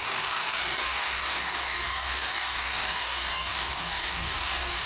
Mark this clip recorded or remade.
remade